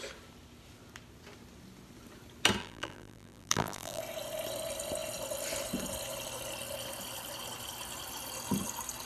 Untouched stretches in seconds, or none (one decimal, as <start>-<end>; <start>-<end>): 0.0-2.6; 4.0-9.1